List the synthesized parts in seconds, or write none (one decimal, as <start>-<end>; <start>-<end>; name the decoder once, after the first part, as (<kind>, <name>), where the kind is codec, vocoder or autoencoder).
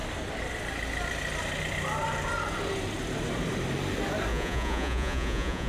4.3-5.7 (vocoder, Vocos)